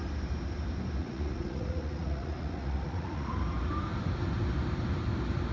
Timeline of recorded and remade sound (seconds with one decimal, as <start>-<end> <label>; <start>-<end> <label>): 0.0-1.0 recorded; 1.0-3.3 remade; 3.3-5.5 recorded